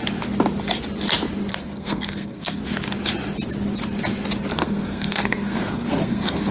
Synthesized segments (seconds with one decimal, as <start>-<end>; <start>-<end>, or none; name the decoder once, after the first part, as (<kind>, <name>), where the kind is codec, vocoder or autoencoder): 1.5-2.6 (codec, SNAC); 4.5-6.5